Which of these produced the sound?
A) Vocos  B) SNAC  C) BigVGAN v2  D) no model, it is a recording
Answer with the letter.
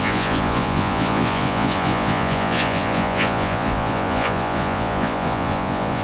A